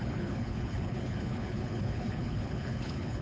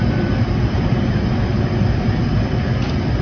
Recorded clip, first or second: second